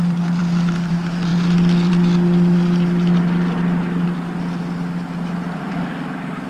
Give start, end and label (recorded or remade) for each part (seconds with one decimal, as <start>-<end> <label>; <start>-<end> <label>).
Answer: 0.0-6.5 recorded